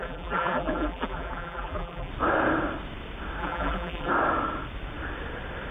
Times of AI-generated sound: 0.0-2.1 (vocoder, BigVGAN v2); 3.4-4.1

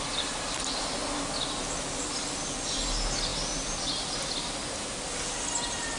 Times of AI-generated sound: none

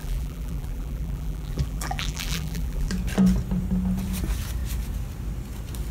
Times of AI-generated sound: 0.0-2.9 (vocoder, BigVGAN v2)

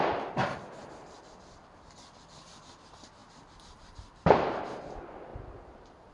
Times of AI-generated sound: 0.8-2.6 (vocoder, BigVGAN v2); 3.2-4.8; 5.3-6.1

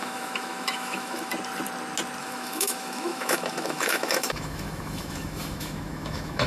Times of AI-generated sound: 0.0-1.3 (autoencoder, DAC-VAE); 2.2-6.5

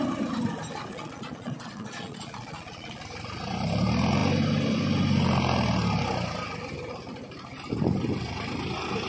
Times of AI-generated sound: 0.9-3.0 (vocoder, Vocos)

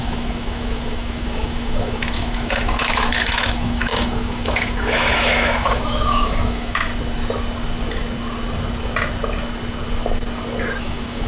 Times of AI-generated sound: 0.0-6.9 (autoencoder, DAC-VAE); 10.8-11.3

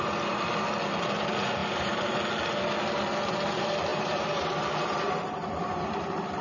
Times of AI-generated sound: 1.6-2.2 (vocoder, BigVGAN v2); 3.9-5.9